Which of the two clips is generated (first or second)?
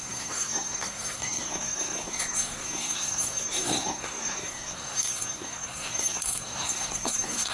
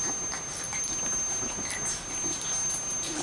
first